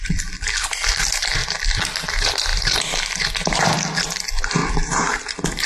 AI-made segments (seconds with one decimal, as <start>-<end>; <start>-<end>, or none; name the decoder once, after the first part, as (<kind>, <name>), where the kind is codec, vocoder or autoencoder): 1.4-2.1 (vocoder, BigVGAN v2); 2.5-3.7; 4.6-5.7